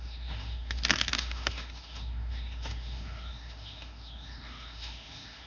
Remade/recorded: remade